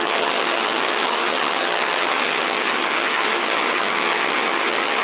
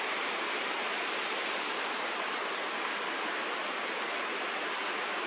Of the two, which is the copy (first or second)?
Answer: first